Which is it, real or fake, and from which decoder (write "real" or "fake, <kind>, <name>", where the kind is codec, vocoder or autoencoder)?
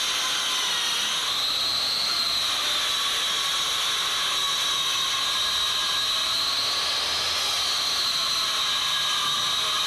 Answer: real